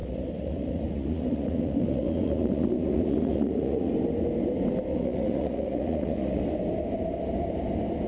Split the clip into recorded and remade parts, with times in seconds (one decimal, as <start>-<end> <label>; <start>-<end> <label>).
0.0-3.9 remade; 3.9-4.9 recorded; 4.9-6.4 remade; 6.4-8.1 recorded